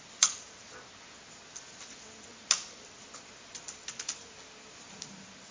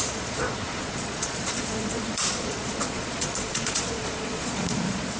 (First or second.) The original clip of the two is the first